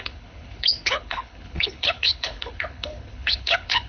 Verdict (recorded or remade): remade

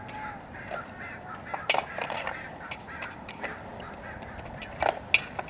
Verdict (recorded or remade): recorded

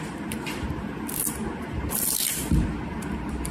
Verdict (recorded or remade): remade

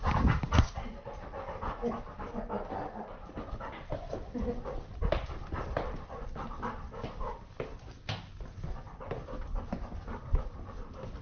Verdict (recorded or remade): recorded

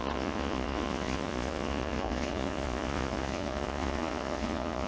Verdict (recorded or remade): remade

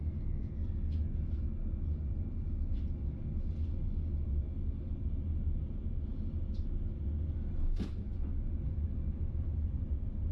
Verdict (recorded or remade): recorded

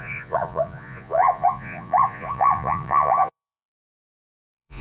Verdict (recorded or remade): remade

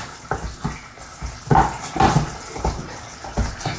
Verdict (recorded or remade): recorded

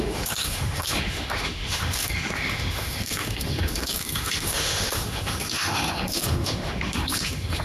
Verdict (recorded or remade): remade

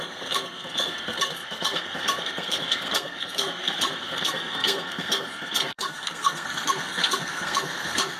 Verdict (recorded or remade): remade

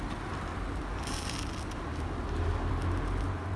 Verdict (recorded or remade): recorded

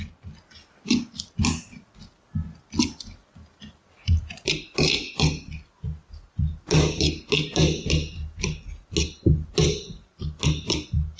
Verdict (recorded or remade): recorded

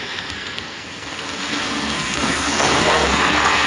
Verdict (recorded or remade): remade